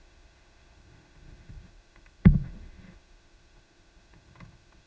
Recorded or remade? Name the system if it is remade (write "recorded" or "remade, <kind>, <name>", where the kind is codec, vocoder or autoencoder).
remade, autoencoder, DAC-VAE